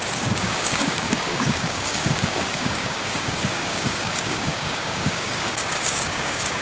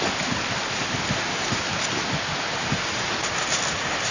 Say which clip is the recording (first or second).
second